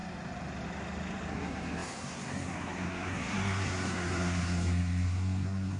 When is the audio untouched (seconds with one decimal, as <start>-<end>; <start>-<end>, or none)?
0.0-1.3